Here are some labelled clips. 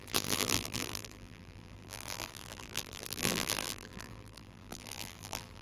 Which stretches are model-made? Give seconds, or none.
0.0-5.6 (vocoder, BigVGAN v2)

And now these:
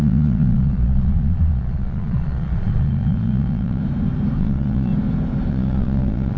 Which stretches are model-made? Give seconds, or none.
0.0-3.8 (vocoder, Vocos); 4.4-4.9; 5.5-6.4

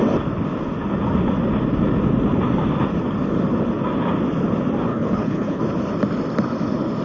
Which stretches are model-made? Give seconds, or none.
4.9-5.6 (codec, HILCodec)

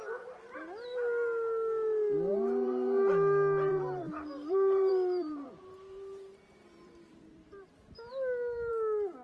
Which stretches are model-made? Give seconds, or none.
2.3-3.1 (vocoder, BigVGAN v2); 3.7-7.7

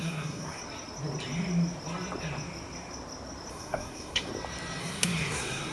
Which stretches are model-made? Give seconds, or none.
0.0-0.6 (codec, SNAC); 3.5-4.3; 4.8-5.7